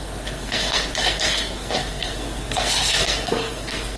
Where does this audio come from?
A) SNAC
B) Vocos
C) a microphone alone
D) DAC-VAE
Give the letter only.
A